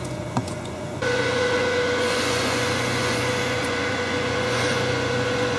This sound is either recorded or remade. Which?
remade